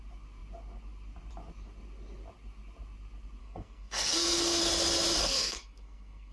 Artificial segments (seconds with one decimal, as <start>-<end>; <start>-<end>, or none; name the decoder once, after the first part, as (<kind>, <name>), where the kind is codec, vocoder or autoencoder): 3.4-4.6 (codec, SNAC); 5.2-6.3